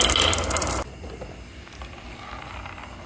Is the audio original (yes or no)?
yes